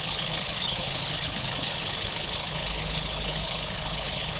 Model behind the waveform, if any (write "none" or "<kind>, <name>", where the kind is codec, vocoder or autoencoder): codec, HILCodec